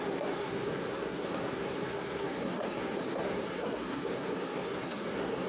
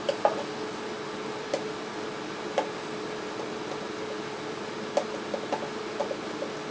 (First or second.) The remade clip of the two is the first